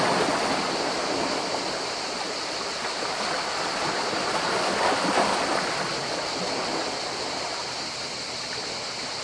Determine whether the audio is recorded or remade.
recorded